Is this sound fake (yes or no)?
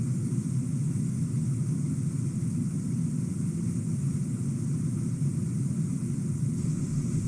no